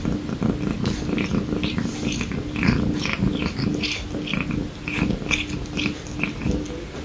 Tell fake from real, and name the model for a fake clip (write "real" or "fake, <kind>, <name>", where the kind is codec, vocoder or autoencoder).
real